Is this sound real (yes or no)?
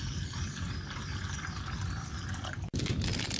yes